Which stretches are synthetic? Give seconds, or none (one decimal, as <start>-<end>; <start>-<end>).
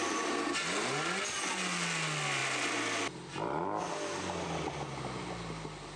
none